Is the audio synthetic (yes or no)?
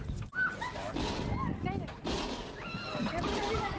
no